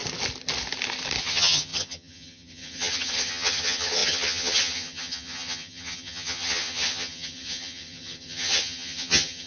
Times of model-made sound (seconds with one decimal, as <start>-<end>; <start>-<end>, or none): 1.2-9.5